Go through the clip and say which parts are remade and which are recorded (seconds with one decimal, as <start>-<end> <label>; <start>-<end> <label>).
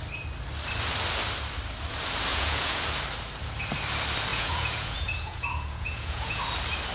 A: 0.0-2.3 recorded; 2.3-2.8 remade; 2.8-4.3 recorded; 4.3-6.4 remade; 6.4-6.9 recorded